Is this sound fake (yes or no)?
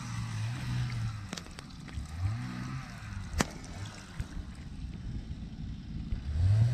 no